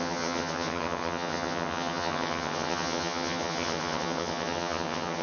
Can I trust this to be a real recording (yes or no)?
no